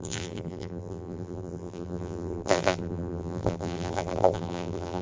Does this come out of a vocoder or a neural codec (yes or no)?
yes